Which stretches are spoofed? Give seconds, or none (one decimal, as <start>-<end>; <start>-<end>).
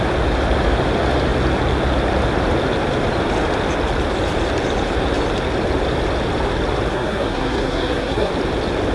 6.9-8.3